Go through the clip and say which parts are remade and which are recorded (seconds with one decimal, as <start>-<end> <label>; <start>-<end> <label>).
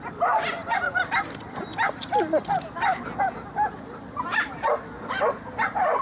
0.0-6.0 recorded